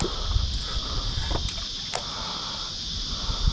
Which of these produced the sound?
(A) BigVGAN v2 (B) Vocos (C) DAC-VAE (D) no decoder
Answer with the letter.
D